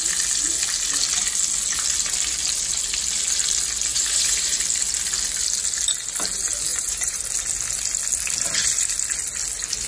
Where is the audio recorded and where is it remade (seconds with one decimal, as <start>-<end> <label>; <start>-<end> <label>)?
0.0-3.9 recorded; 3.9-4.6 remade; 4.6-6.7 recorded; 6.7-7.2 remade; 7.2-9.9 recorded